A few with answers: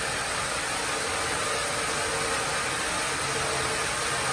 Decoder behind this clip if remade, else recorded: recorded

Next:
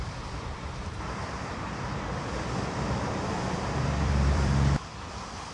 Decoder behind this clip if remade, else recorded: remade, vocoder, BigVGAN v2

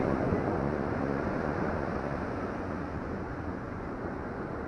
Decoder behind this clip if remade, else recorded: remade, vocoder, Vocos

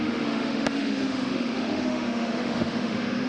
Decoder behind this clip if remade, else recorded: remade, autoencoder, DAC-VAE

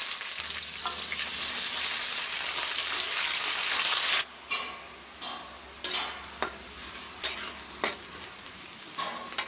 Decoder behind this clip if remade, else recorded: recorded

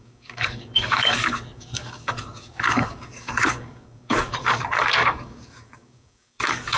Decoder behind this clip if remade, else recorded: remade, codec, DAC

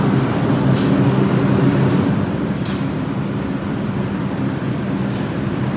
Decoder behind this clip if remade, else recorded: recorded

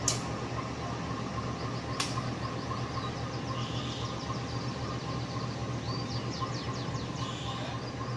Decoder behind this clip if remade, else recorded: recorded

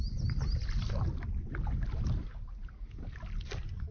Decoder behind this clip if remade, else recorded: recorded